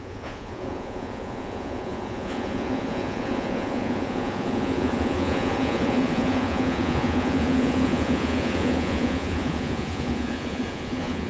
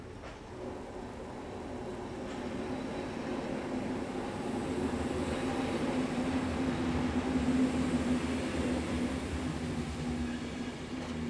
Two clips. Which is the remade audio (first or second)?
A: first